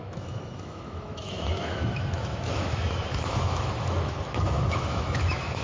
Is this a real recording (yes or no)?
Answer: no